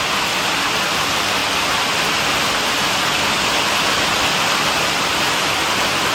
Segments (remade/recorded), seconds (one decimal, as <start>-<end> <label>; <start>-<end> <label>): 0.0-6.1 recorded